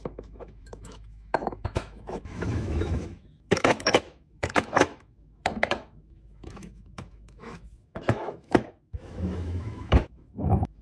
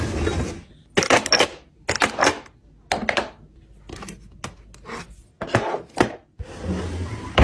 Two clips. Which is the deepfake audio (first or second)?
first